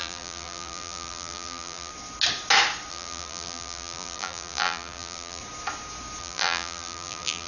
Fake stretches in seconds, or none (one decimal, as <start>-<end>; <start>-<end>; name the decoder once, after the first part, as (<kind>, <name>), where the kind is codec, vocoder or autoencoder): 0.0-1.9 (vocoder, BigVGAN v2); 2.9-5.4; 6.2-7.5